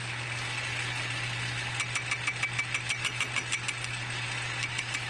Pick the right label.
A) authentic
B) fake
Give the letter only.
A